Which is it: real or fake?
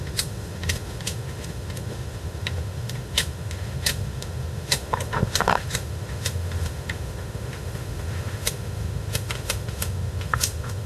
fake